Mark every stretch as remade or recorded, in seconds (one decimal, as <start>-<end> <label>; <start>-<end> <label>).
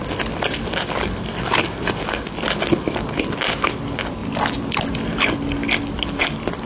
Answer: 0.0-6.7 recorded